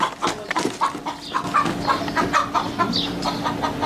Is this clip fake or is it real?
real